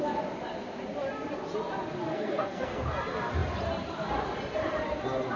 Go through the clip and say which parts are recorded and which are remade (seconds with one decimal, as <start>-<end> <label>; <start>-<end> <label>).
0.0-2.1 recorded; 2.1-2.8 remade; 2.8-5.4 recorded

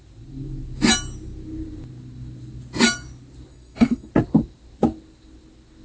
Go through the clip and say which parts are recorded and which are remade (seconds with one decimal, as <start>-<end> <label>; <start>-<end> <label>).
0.0-3.5 recorded; 3.5-4.1 remade; 4.1-5.8 recorded